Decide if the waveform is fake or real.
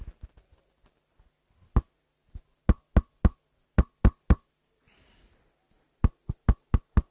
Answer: real